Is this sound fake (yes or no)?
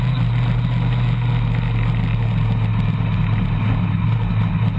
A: no